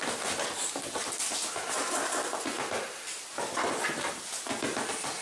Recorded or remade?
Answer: recorded